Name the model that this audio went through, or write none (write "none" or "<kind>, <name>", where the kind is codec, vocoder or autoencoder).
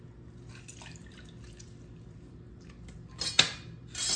none